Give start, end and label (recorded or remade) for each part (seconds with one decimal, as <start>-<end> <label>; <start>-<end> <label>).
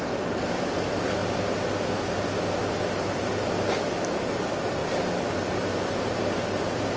0.0-7.0 recorded